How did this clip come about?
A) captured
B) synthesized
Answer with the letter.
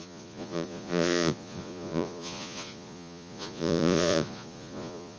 B